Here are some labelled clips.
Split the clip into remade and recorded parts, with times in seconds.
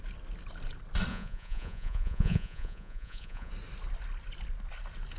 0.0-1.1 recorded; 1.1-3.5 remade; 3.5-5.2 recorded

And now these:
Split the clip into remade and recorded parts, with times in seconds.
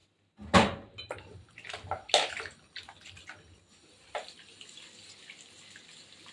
0.0-6.3 recorded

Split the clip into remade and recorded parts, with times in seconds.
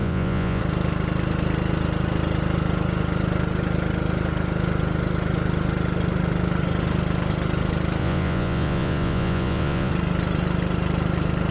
0.0-0.6 remade; 0.6-8.0 recorded; 8.0-9.9 remade; 9.9-11.5 recorded